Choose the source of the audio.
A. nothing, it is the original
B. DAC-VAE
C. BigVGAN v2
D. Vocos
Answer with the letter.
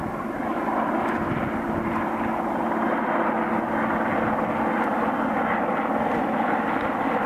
A